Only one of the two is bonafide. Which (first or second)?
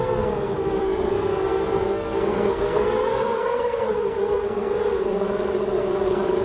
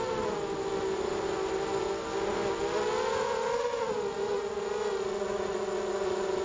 second